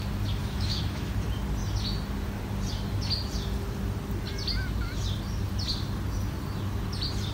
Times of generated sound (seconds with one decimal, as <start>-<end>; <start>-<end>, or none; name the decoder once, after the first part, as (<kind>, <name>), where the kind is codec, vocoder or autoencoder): 0.4-1.1 (autoencoder, DAC-VAE)